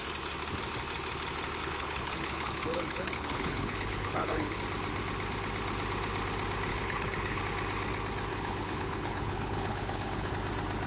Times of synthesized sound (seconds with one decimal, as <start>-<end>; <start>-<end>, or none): 1.6-4.6; 6.7-7.4; 8.3-10.3

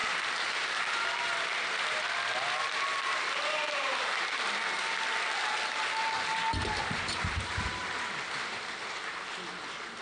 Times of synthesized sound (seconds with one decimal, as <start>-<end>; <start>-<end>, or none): 1.8-10.0

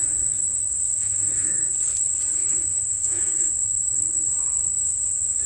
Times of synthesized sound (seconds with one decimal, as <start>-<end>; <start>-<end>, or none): 0.0-1.7; 2.4-5.1

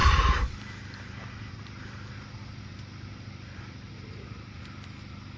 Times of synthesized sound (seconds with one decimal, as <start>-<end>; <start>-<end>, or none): 0.0-2.1; 2.7-4.6